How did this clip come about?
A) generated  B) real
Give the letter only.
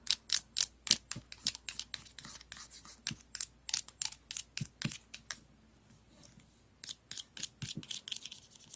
B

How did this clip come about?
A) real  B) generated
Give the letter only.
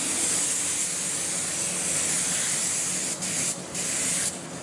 A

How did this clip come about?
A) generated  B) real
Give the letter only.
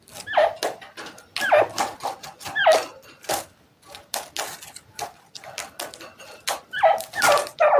B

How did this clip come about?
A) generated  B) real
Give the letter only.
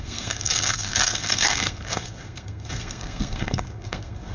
A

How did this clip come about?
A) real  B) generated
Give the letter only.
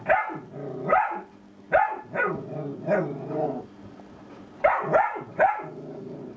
A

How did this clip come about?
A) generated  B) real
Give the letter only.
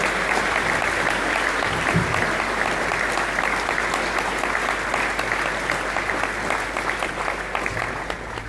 B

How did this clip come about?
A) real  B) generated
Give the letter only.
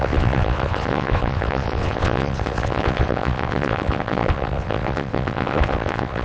B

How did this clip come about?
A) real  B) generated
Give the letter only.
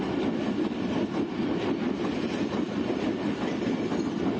A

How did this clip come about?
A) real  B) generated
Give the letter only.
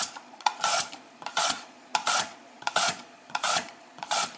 B